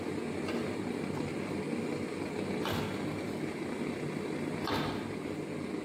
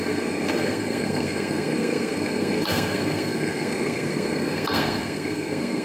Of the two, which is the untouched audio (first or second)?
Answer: first